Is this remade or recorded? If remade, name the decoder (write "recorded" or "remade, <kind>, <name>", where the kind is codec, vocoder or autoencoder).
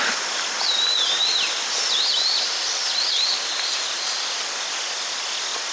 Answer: recorded